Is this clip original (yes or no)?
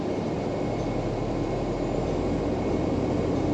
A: yes